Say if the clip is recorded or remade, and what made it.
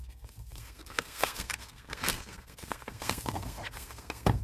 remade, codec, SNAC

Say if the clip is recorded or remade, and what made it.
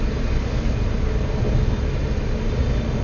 recorded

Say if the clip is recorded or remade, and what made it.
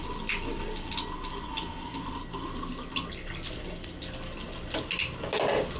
recorded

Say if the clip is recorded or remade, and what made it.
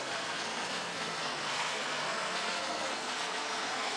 remade, codec, SNAC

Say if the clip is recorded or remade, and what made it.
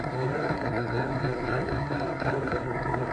remade, codec, SNAC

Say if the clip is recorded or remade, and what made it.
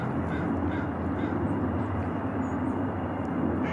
recorded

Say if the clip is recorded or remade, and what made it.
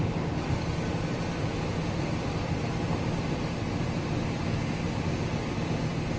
recorded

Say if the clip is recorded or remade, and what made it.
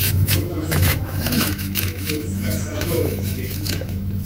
remade, autoencoder, DAC-VAE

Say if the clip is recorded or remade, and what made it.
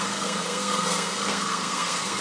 remade, codec, SNAC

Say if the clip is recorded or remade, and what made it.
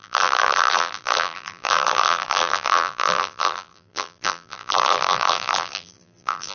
remade, vocoder, BigVGAN v2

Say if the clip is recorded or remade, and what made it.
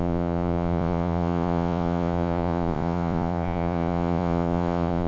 remade, vocoder, Vocos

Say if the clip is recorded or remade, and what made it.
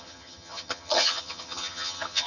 remade, vocoder, HiFi-GAN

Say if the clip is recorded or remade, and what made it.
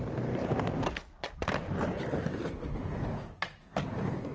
recorded